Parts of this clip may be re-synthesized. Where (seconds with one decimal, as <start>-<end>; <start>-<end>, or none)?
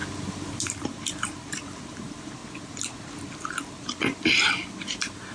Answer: 0.6-2.4; 4.8-5.3